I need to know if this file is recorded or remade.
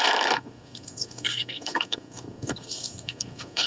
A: remade